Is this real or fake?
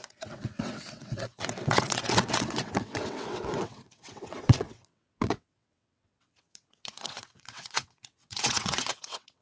fake